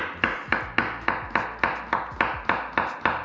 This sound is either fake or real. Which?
real